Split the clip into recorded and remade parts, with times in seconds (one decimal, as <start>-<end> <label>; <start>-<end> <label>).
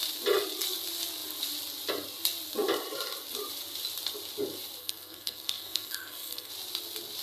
0.0-4.8 recorded; 4.8-6.5 remade; 6.5-7.2 recorded